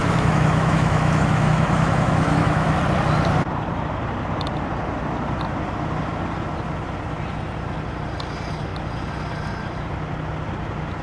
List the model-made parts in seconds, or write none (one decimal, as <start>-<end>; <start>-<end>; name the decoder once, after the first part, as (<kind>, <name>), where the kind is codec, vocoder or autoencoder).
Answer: 0.0-2.8 (autoencoder, DAC-VAE)